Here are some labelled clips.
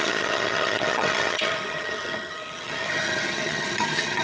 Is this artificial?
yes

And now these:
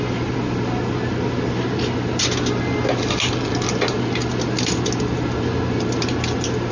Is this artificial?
no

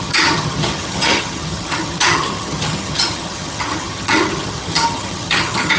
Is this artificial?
yes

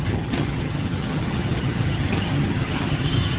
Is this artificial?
yes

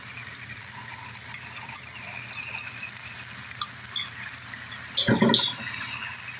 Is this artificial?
no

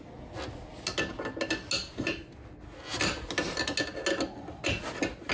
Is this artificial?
no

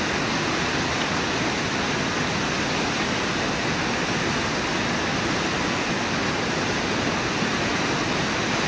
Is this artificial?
no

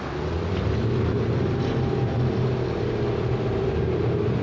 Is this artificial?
no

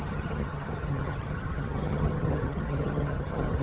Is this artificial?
yes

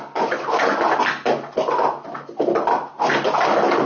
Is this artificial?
no